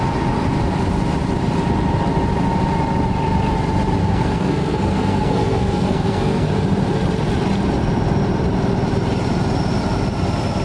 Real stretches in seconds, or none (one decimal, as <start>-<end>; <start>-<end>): 0.0-4.0; 6.5-10.6